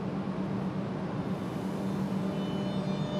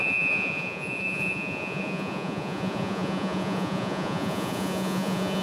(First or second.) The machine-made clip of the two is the second